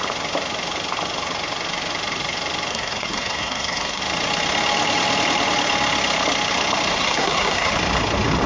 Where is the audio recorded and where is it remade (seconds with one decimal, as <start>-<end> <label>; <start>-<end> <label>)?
0.0-2.7 recorded; 2.7-4.0 remade; 4.0-6.9 recorded; 6.9-7.7 remade; 7.7-8.5 recorded